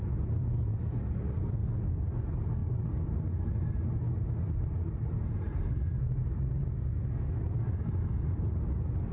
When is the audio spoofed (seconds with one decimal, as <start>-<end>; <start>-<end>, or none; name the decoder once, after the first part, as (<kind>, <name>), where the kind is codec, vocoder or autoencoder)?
none